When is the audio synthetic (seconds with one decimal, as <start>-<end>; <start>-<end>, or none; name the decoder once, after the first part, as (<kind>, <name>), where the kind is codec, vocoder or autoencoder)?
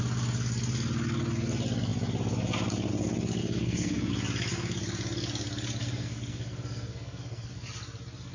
3.4-4.1 (codec, SNAC); 5.8-7.5